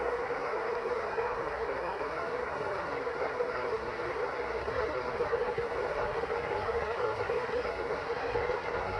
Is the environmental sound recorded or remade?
remade